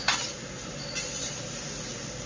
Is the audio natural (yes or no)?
yes